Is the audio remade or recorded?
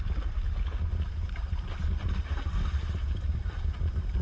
recorded